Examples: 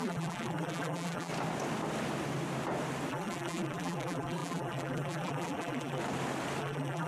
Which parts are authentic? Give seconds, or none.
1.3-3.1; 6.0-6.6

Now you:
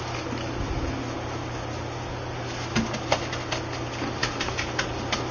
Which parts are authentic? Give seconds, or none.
0.0-5.3

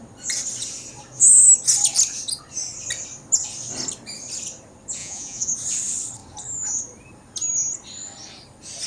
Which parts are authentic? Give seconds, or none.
0.0-5.0; 5.5-8.9